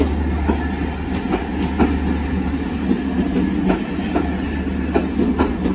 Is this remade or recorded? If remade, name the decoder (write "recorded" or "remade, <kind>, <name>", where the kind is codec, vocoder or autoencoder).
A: recorded